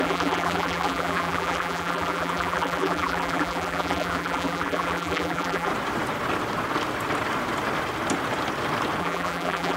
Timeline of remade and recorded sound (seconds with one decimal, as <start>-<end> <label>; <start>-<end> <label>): 0.0-5.7 remade; 5.7-9.0 recorded; 9.0-9.8 remade